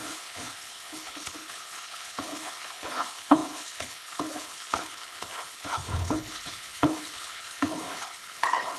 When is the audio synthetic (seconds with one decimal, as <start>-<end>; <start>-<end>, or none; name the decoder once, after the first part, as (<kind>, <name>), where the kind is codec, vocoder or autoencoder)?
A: 0.0-8.8 (codec, HILCodec)